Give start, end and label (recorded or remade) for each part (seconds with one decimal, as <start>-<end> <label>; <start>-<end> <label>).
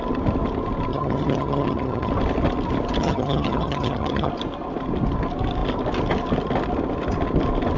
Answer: 0.0-0.9 recorded; 0.9-2.1 remade; 2.1-3.0 recorded; 3.0-4.3 remade; 4.3-7.8 recorded